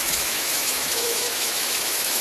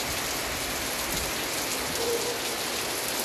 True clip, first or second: second